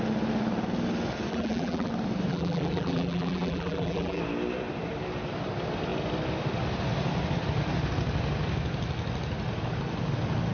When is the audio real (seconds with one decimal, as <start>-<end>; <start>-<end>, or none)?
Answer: 0.0-1.3; 1.9-2.3; 4.2-10.5